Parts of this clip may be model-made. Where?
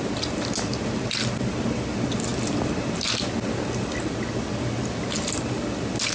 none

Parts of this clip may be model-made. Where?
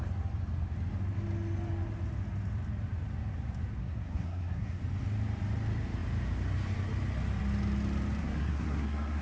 3.8-4.8; 8.2-9.2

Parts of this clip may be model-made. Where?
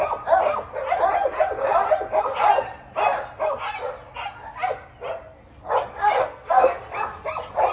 6.2-6.8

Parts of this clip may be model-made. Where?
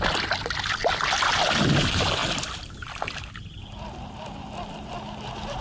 none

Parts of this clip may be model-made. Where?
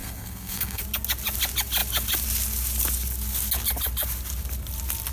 0.0-0.8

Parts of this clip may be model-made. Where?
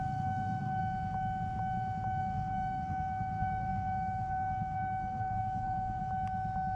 0.0-0.8; 2.2-6.0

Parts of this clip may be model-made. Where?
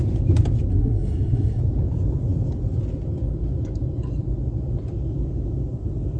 0.7-1.6